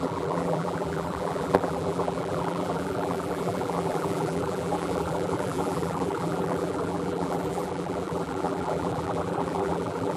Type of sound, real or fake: fake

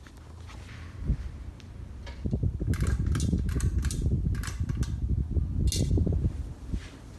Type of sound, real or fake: real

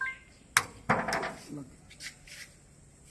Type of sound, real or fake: real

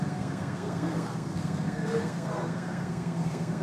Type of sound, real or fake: fake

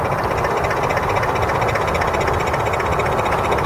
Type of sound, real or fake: real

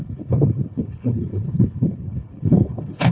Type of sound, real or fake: fake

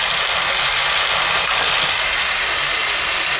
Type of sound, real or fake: real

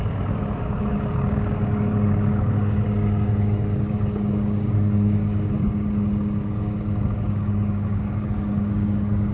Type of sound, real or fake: fake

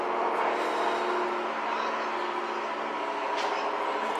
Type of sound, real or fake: real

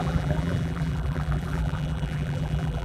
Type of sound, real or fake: fake